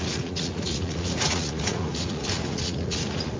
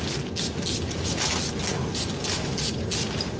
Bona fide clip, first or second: second